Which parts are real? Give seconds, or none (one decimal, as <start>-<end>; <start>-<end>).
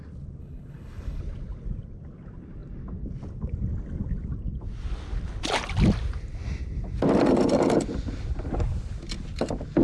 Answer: 0.0-0.4; 1.2-9.8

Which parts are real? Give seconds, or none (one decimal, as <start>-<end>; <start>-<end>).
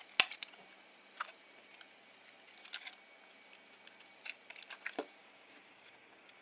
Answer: 0.0-5.2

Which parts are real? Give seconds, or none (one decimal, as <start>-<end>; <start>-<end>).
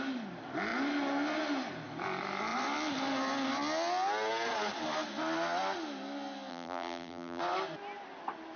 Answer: 0.0-6.5; 7.4-8.6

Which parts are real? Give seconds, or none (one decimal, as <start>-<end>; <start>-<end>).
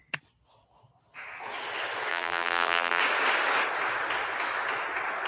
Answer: 0.0-2.1; 3.0-5.3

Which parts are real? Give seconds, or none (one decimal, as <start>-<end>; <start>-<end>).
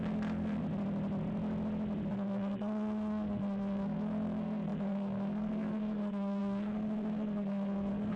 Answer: 0.6-2.1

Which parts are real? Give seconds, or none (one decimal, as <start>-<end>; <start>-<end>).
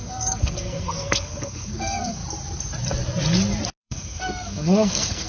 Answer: 2.2-3.8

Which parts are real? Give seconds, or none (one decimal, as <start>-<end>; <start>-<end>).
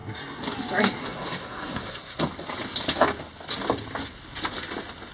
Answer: 0.0-1.0; 2.2-5.1